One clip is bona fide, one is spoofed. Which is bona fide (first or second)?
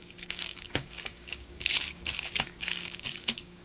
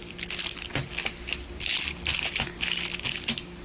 second